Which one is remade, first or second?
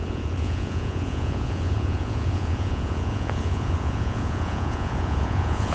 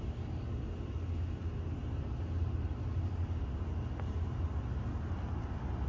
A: first